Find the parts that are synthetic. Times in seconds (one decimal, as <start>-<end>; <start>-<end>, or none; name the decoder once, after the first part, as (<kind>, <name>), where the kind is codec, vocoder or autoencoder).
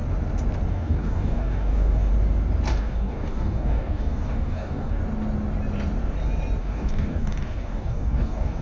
0.7-2.1 (codec, DAC); 2.7-5.0; 6.6-8.6